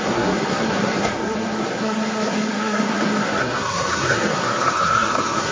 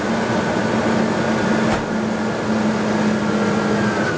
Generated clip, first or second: first